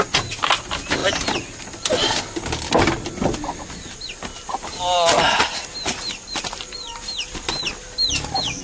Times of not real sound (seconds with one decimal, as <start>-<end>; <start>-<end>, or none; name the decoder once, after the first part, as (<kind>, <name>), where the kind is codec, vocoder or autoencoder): none